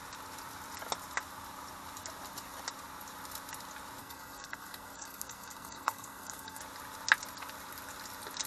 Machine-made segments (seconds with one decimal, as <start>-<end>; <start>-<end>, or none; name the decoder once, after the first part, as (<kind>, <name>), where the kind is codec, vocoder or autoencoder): 4.0-6.6 (codec, SNAC)